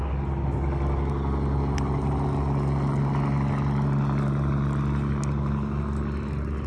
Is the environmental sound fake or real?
real